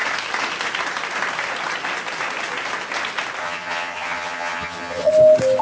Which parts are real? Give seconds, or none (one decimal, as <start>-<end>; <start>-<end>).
0.0-3.4; 5.1-5.6